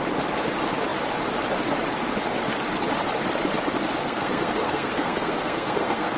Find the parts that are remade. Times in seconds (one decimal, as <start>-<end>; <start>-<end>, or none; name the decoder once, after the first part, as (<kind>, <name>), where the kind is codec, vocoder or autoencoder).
4.0-6.2 (codec, SNAC)